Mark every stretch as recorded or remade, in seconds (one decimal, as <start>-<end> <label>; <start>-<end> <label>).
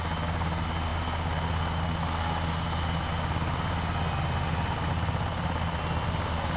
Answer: 0.0-6.6 recorded